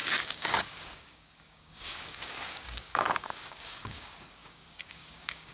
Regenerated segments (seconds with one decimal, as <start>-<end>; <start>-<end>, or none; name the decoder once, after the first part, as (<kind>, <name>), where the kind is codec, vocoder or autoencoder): 0.0-5.5 (codec, DAC)